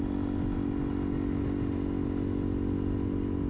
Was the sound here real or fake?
real